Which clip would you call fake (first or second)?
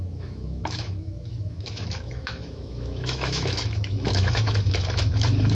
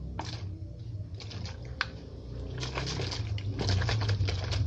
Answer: first